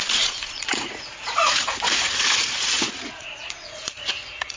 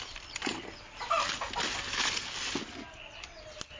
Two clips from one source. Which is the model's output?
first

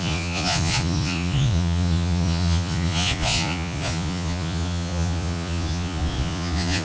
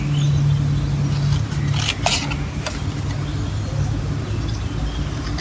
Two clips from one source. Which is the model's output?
first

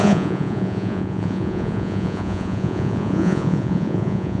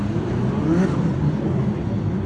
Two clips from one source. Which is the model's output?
first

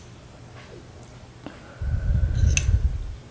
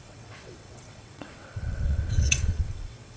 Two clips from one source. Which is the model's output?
second